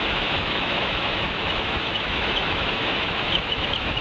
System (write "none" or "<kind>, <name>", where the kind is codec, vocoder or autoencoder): autoencoder, DAC-VAE